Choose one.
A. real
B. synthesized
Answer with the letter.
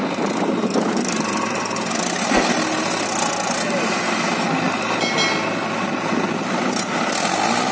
A